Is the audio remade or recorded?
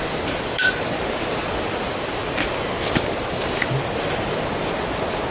recorded